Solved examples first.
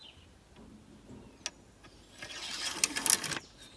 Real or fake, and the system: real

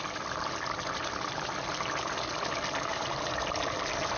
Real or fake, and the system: real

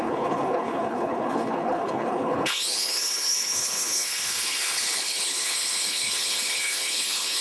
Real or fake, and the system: fake, codec, HILCodec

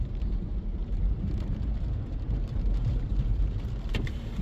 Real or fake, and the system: fake, vocoder, BigVGAN v2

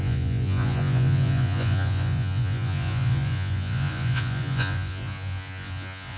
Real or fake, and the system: fake, vocoder, Vocos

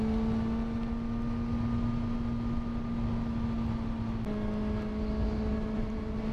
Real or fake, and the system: real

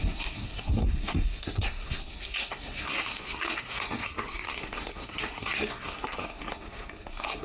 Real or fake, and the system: fake, codec, SNAC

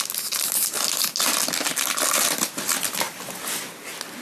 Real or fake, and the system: real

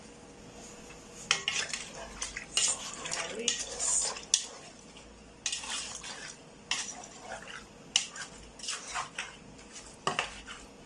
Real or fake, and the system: real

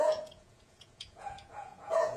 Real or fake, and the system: fake, vocoder, Vocos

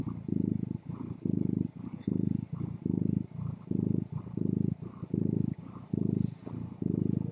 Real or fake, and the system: fake, vocoder, BigVGAN v2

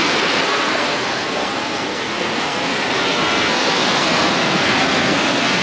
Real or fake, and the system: fake, codec, SNAC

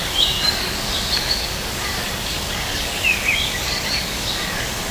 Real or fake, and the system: fake, codec, DAC